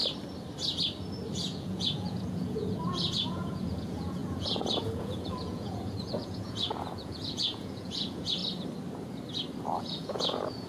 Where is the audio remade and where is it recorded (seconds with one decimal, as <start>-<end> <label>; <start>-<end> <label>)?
0.0-1.3 recorded; 1.3-8.4 remade; 8.4-9.6 recorded; 9.6-10.7 remade